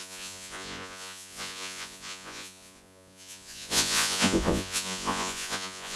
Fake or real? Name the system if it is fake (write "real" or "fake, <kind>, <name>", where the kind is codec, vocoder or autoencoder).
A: fake, vocoder, Vocos